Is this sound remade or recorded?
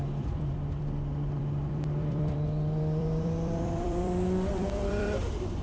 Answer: remade